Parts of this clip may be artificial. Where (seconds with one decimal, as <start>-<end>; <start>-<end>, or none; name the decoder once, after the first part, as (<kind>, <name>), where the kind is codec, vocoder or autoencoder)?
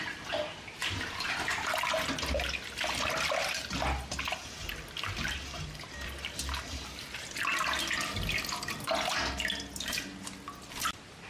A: 0.8-1.9 (vocoder, BigVGAN v2)